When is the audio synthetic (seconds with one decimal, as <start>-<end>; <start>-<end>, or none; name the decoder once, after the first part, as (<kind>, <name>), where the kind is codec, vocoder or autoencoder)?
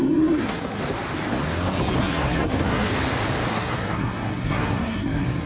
0.0-0.8 (codec, SNAC); 2.0-2.9; 3.5-5.5